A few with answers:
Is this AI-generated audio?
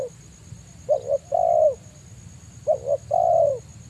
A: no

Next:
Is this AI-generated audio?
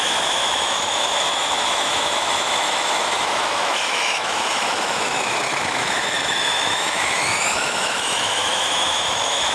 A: yes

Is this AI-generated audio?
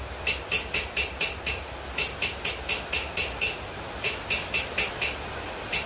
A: no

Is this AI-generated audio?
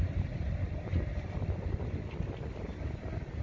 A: no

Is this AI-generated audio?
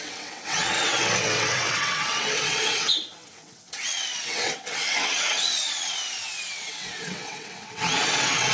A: yes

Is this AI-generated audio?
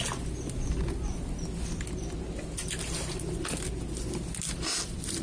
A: no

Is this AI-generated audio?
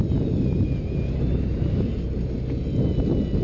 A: no